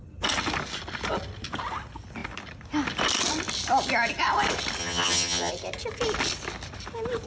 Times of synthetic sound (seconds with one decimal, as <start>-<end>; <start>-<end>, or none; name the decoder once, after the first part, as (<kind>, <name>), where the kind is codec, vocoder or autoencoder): 4.8-5.5 (vocoder, HiFi-GAN)